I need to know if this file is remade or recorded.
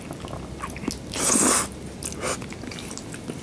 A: recorded